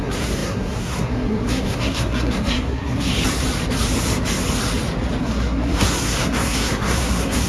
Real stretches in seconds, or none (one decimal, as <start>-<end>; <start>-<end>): 3.1-5.2